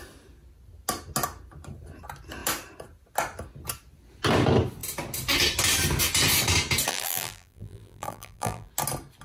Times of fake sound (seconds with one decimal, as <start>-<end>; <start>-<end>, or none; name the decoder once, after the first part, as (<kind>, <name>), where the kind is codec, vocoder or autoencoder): 6.9-8.7 (vocoder, BigVGAN v2)